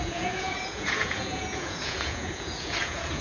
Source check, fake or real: fake